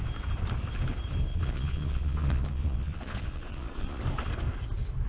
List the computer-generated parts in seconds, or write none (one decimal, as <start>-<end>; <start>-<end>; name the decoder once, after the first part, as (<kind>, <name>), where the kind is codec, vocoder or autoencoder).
1.3-4.0 (vocoder, Vocos)